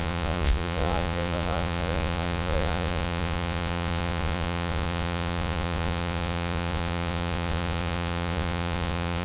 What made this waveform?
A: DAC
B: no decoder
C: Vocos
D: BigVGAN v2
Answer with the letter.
C